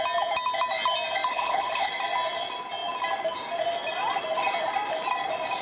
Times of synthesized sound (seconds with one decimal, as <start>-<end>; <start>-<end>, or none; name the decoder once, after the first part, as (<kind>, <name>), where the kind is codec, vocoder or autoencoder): 1.3-1.9 (codec, HILCodec)